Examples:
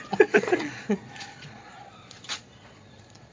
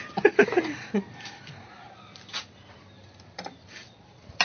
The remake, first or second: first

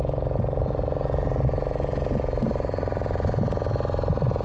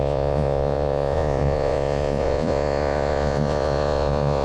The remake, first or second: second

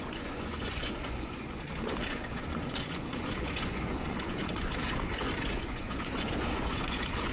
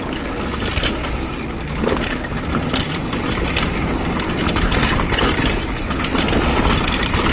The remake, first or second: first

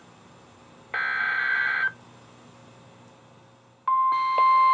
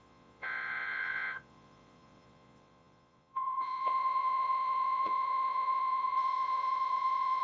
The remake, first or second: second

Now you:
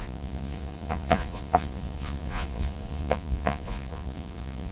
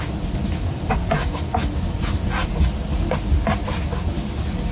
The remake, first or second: first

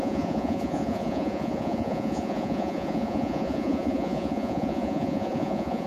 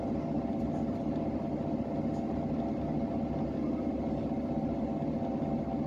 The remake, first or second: first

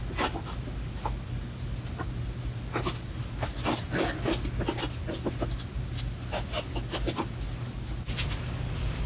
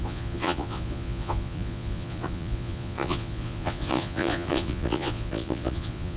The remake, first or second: second